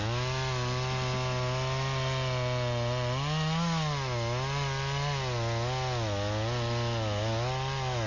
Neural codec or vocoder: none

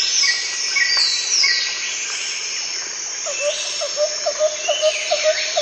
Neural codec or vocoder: none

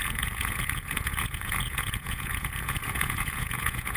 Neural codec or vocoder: vocoder, Vocos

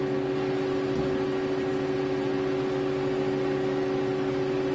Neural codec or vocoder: none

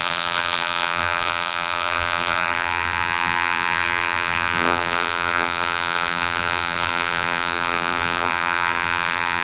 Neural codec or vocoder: vocoder, BigVGAN v2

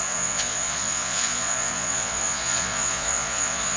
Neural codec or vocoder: vocoder, Vocos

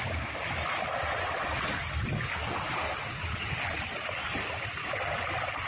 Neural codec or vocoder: none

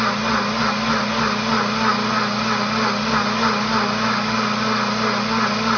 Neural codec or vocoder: none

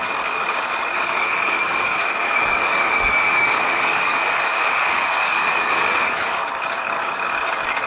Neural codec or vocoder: codec, DAC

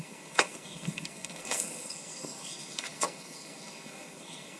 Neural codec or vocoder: codec, SNAC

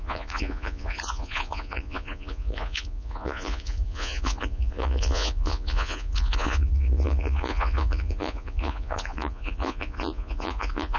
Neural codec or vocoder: vocoder, Vocos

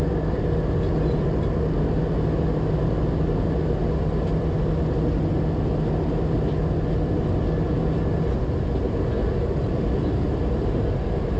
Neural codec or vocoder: none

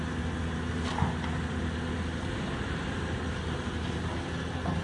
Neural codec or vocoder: none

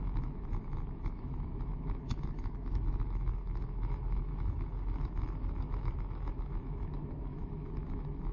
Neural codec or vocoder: autoencoder, DAC-VAE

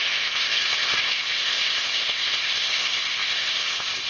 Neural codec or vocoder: codec, ZipCodec